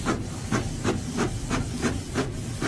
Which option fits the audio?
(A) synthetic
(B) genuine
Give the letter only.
B